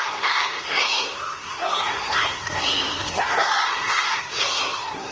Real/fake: fake